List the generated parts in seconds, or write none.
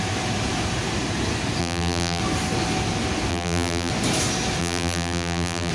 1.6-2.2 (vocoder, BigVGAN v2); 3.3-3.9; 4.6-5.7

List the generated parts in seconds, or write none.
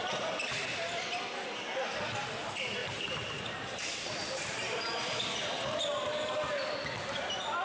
2.8-5.1 (vocoder, BigVGAN v2)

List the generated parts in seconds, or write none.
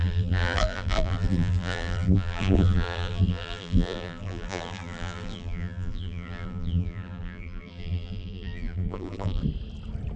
0.0-9.4 (vocoder, BigVGAN v2)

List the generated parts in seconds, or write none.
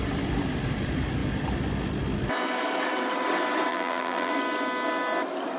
3.7-4.3 (vocoder, BigVGAN v2)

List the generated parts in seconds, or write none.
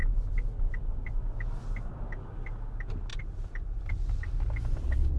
3.1-4.3 (vocoder, BigVGAN v2)